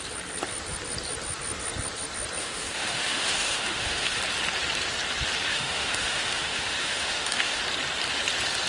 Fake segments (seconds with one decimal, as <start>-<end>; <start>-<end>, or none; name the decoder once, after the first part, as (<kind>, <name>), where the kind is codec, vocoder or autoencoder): 2.4-4.2 (autoencoder, DAC-VAE); 5.5-7.6